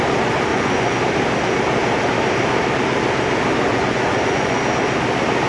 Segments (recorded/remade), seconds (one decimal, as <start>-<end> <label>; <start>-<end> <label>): 0.0-0.5 recorded; 0.5-1.0 remade; 1.0-3.7 recorded; 3.7-4.6 remade; 4.6-5.5 recorded